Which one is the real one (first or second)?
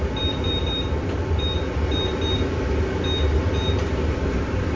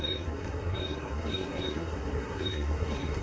first